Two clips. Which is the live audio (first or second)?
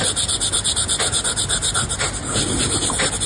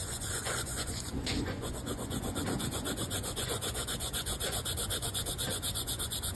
first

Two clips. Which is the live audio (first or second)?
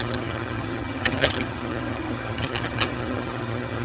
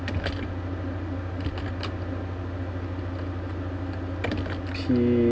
second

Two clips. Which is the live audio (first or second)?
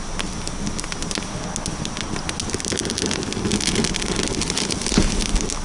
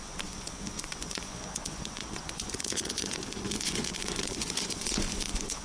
first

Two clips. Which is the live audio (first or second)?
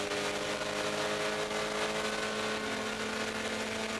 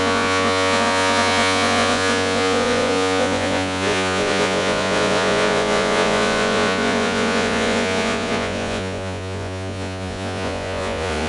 first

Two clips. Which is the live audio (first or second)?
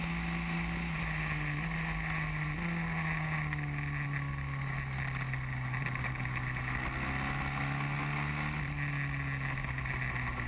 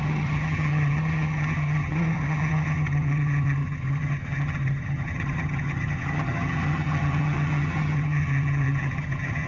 first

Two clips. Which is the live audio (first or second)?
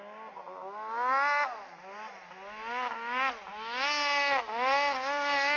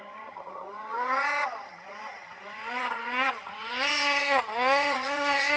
first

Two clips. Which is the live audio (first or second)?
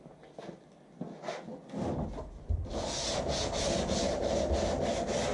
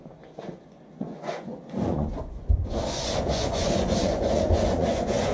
first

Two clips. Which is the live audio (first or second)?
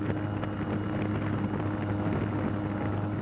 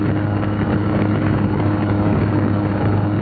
first